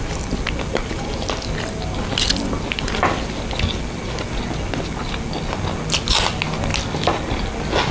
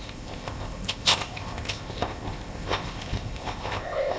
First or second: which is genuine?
first